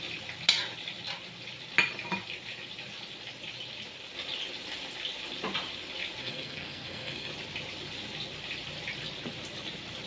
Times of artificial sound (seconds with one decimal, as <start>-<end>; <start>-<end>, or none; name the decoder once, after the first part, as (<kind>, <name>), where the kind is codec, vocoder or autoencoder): 6.2-7.3 (codec, SNAC)